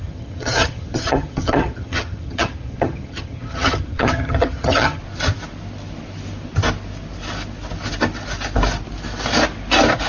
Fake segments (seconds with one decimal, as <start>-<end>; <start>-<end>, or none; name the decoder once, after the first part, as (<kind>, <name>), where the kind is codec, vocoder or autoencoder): 0.0-5.0 (vocoder, HiFi-GAN)

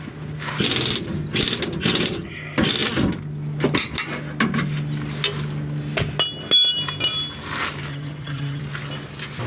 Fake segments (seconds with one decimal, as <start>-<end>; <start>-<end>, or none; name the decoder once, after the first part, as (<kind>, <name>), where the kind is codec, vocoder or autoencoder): 7.9-8.6 (vocoder, HiFi-GAN)